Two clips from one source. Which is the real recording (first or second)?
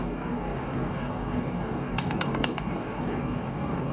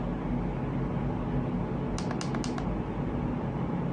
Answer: second